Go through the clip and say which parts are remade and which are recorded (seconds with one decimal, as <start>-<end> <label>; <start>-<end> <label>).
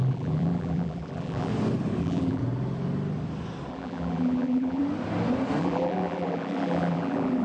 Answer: 0.0-1.5 remade; 1.5-2.0 recorded; 2.0-2.4 remade; 2.4-3.7 recorded; 3.7-4.8 remade; 4.8-5.6 recorded; 5.6-7.4 remade